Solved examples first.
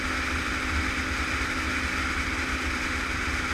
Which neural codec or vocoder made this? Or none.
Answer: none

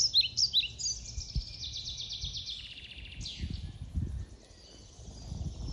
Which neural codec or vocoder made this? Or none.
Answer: none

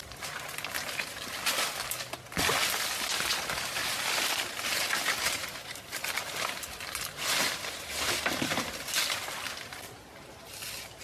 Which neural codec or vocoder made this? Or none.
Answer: none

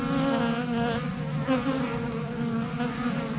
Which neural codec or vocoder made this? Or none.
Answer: none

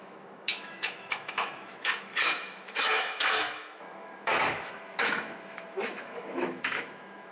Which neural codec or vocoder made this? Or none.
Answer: autoencoder, DAC-VAE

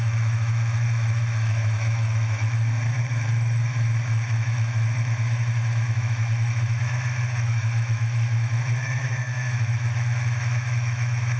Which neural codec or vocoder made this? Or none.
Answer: autoencoder, DAC-VAE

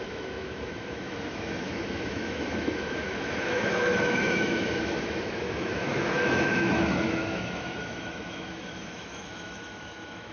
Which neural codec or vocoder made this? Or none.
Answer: autoencoder, DAC-VAE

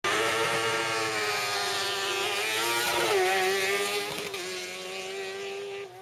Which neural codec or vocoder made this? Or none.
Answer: none